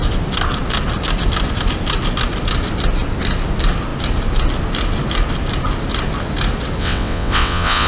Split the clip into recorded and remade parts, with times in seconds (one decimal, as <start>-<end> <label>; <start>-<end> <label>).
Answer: 0.0-6.8 recorded; 6.8-7.9 remade